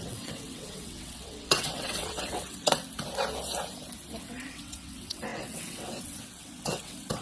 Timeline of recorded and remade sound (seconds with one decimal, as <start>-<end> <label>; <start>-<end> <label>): 0.0-2.8 remade; 2.8-4.2 recorded; 4.2-7.2 remade

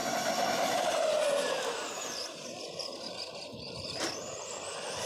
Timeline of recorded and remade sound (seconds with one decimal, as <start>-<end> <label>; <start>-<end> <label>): 0.0-3.1 remade; 3.1-3.5 recorded; 3.5-4.5 remade; 4.5-5.1 recorded

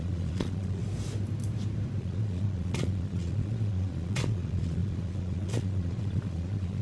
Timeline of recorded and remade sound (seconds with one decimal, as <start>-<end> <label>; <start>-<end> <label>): 0.0-0.8 remade; 0.8-2.0 recorded; 2.0-6.8 remade

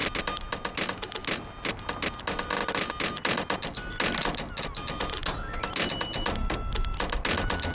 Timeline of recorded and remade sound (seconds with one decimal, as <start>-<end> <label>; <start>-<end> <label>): 0.0-7.7 recorded

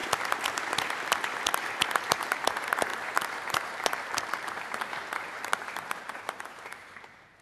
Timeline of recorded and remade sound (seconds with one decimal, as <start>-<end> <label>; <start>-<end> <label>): 0.0-2.0 recorded; 2.0-7.4 remade

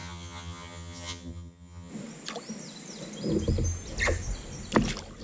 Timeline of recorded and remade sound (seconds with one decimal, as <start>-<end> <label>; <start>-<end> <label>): 0.0-1.9 remade; 1.9-5.2 recorded

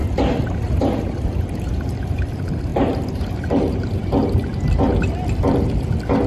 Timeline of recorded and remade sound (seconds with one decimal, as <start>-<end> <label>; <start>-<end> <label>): 0.0-1.7 recorded; 1.7-4.5 remade; 4.5-6.3 recorded

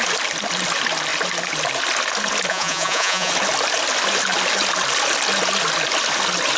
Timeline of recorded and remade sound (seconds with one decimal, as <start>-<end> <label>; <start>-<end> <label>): 0.0-2.5 recorded; 2.5-3.3 remade; 3.3-6.6 recorded